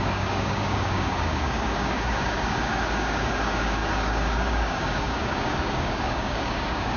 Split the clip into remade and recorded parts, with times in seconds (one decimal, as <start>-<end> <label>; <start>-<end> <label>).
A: 0.0-7.0 remade